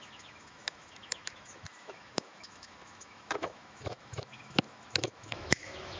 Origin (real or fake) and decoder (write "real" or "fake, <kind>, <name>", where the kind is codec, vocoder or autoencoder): fake, autoencoder, DAC-VAE